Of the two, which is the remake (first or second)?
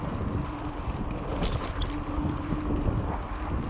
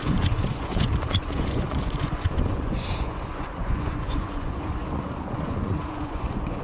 second